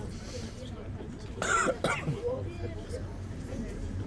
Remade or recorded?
remade